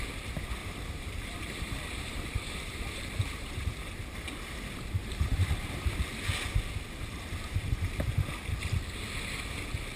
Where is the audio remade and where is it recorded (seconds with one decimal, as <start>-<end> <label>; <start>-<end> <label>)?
0.0-0.6 recorded; 0.6-3.7 remade; 3.7-5.0 recorded; 5.0-6.0 remade; 6.0-10.0 recorded